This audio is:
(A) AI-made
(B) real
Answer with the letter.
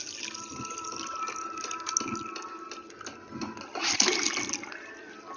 B